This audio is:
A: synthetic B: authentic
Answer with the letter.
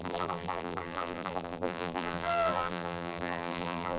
A